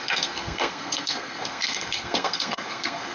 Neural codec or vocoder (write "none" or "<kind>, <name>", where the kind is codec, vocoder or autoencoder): codec, SNAC